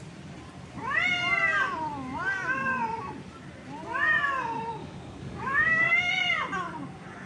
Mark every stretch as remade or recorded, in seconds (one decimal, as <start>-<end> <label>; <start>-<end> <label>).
0.0-4.8 recorded; 4.8-6.1 remade; 6.1-7.3 recorded